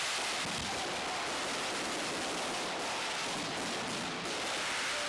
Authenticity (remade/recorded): recorded